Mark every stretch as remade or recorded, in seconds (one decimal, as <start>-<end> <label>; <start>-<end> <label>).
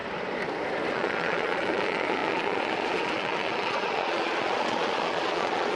0.0-0.9 recorded; 0.9-5.8 remade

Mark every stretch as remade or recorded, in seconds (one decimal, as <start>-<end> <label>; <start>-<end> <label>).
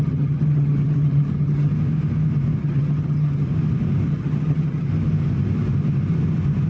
0.0-1.7 remade; 1.7-2.6 recorded; 2.6-3.5 remade; 3.5-4.1 recorded; 4.1-4.9 remade; 4.9-6.7 recorded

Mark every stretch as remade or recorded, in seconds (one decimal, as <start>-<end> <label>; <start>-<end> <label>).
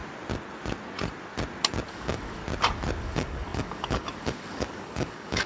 0.0-1.9 recorded; 1.9-2.4 remade; 2.4-3.0 recorded; 3.0-5.5 remade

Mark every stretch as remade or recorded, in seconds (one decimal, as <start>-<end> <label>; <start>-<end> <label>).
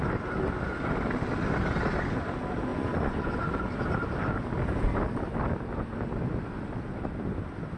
0.0-2.7 recorded; 2.7-3.6 remade; 3.6-7.8 recorded